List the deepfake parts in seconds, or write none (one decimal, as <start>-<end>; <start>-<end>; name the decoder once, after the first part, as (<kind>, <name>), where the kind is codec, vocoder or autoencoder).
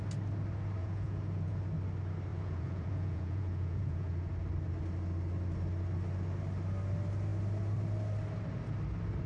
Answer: 0.8-1.6 (vocoder, Vocos); 2.3-4.3